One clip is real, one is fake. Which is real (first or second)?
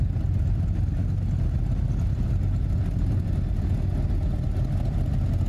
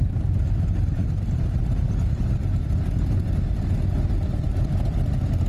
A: first